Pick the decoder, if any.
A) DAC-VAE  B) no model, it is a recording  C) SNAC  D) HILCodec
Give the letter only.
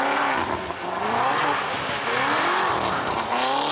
B